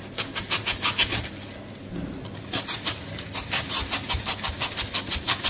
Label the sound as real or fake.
real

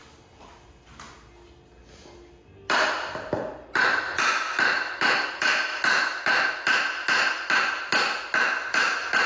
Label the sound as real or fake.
real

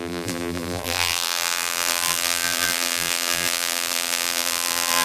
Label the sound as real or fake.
fake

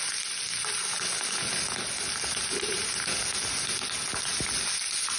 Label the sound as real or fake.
real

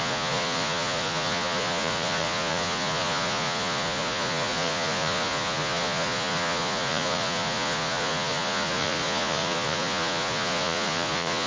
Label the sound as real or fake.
fake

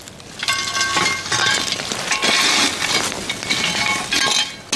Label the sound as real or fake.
real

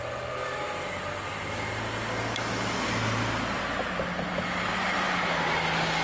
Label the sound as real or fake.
real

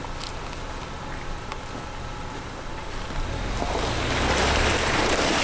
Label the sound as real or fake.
real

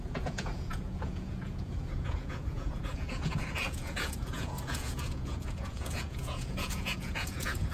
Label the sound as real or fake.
fake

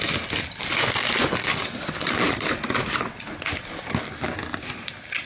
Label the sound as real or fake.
real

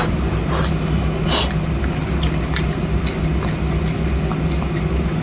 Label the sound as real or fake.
real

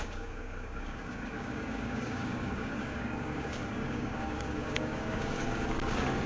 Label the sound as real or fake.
fake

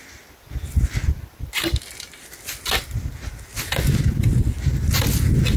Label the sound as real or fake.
real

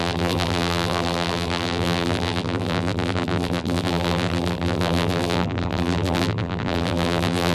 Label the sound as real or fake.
fake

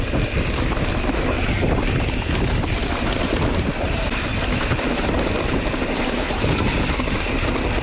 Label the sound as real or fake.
real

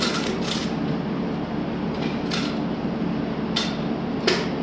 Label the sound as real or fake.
real